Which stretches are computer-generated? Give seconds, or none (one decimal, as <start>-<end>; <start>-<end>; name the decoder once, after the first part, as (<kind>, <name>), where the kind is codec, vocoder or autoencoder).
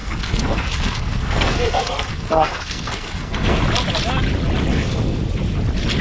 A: 0.0-3.6 (codec, SNAC); 4.7-5.2